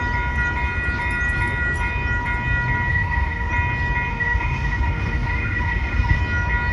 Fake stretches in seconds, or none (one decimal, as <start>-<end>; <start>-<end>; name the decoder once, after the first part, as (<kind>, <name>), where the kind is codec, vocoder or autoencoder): 2.9-3.5 (autoencoder, DAC-VAE); 4.1-6.2